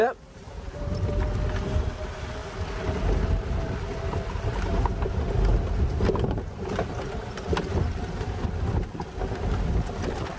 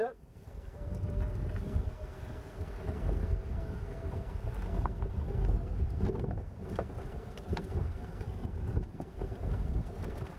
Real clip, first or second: first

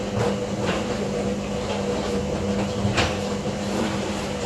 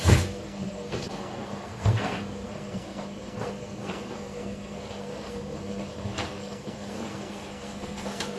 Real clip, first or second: first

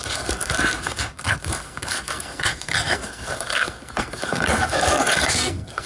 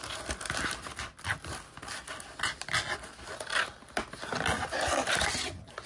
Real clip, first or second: second